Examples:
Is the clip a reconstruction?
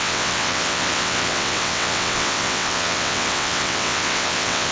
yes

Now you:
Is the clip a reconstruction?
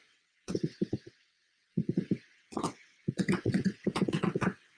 yes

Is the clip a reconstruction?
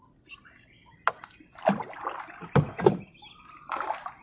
no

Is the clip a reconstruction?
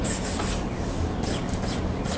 no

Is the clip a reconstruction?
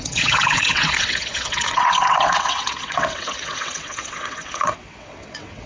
yes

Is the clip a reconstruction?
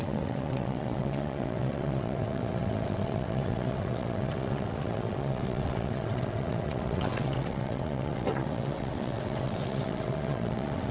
yes